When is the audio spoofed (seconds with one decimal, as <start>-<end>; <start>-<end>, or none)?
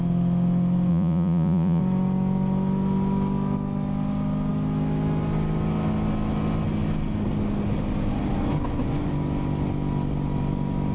0.9-1.8